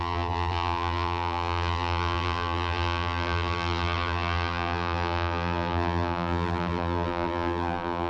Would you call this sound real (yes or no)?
no